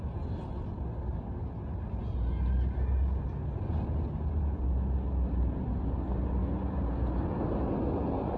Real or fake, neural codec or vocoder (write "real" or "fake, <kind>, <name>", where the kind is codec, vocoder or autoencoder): real